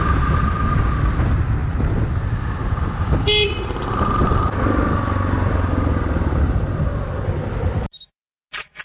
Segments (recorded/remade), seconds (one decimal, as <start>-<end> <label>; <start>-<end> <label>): 0.0-8.8 recorded